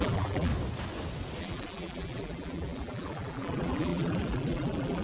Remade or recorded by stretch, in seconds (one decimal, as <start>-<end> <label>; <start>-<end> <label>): 0.0-0.5 remade; 0.5-1.4 recorded; 1.4-5.0 remade